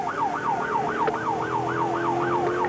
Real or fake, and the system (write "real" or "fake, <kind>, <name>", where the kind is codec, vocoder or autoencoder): real